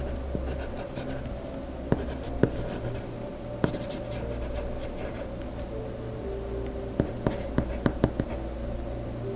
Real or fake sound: real